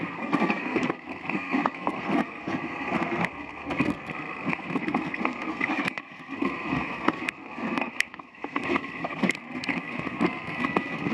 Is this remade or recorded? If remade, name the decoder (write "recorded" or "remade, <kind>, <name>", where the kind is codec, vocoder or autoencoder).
remade, codec, SNAC